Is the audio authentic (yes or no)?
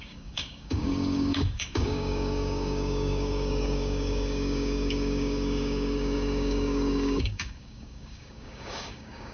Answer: no